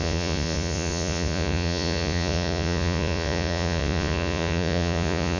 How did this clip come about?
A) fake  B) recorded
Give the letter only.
A